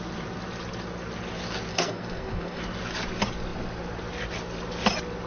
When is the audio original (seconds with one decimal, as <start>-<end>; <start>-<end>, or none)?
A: 0.0-1.7; 2.6-5.3